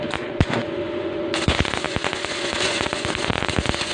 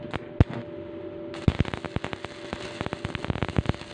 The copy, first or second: first